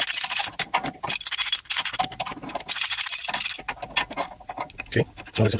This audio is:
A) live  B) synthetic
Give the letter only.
A